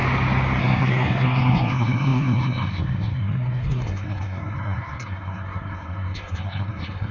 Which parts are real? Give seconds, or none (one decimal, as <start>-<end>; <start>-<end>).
0.0-0.6